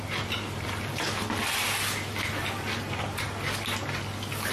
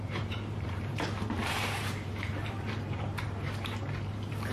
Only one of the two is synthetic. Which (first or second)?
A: second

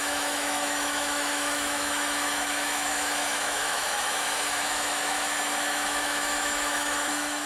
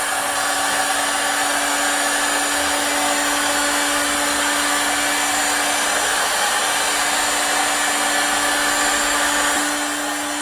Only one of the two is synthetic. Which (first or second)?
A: first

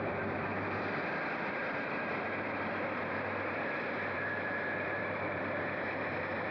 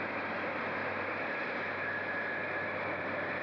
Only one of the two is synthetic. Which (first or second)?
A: first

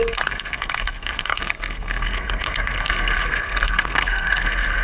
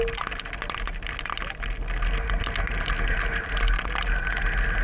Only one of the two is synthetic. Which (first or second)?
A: first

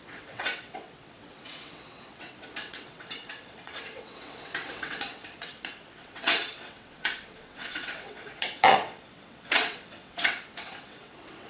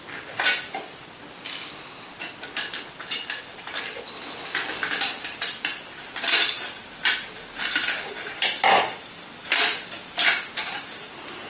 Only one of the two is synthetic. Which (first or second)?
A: first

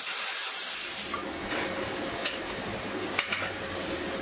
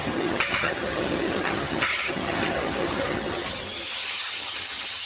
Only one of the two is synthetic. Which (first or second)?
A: second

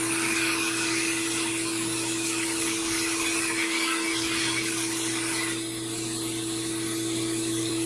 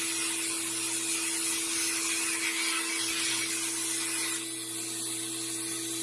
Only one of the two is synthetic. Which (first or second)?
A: first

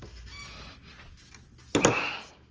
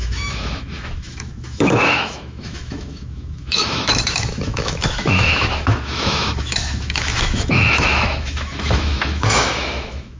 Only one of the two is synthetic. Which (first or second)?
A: second